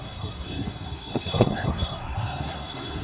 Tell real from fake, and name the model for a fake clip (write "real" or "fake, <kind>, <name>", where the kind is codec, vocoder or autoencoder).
fake, codec, SNAC